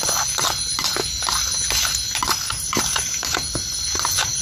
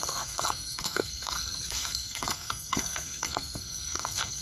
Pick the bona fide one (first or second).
first